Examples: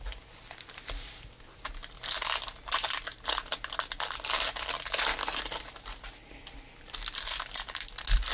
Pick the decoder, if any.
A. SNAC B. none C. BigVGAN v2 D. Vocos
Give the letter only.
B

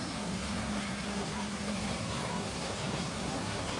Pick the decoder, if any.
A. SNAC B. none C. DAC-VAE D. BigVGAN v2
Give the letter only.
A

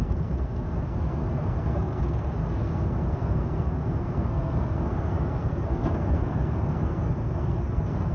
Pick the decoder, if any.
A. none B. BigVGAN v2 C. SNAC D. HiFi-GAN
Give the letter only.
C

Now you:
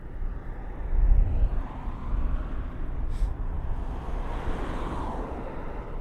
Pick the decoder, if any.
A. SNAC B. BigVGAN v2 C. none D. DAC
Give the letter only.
C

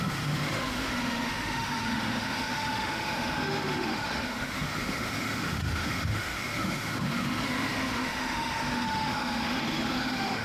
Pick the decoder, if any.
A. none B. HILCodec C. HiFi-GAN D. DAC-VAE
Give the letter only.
D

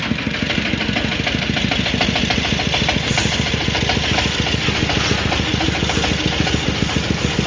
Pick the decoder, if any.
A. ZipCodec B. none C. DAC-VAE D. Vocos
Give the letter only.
B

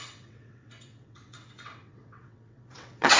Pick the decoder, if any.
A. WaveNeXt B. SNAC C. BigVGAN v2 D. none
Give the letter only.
A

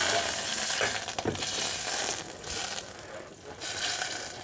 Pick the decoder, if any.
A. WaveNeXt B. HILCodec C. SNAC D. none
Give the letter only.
D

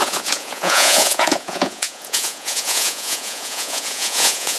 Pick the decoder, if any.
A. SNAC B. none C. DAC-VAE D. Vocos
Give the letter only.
D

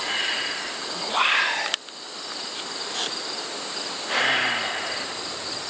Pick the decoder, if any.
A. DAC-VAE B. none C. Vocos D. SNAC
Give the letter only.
B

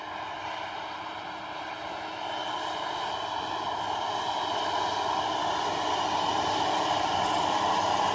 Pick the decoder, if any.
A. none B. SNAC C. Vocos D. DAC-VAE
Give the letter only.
A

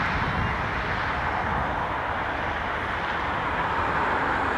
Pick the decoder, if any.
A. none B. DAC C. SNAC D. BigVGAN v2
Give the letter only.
A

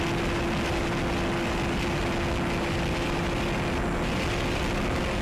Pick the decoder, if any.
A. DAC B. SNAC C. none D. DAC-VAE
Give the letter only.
C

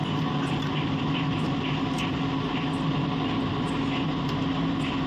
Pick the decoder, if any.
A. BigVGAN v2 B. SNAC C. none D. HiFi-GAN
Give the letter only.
C